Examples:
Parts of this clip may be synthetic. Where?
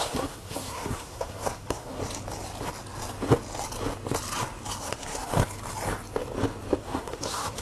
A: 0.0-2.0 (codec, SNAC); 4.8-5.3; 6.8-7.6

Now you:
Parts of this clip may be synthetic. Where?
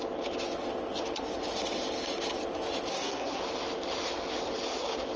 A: 2.9-3.4 (codec, SNAC)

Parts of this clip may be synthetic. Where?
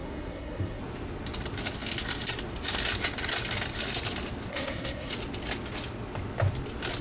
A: 0.0-0.8 (codec, SNAC); 4.5-5.1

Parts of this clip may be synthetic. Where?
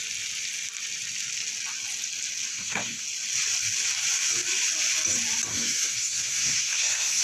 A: 2.5-3.0 (codec, SNAC); 5.5-7.2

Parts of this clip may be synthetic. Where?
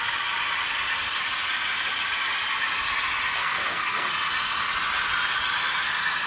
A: 3.4-4.1 (codec, SNAC)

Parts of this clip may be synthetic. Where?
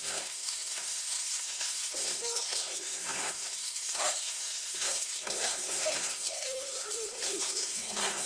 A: 0.0-8.3 (codec, SNAC)